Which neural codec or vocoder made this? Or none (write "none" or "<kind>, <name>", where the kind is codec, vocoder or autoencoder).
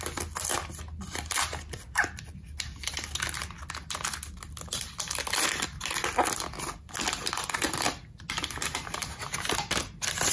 none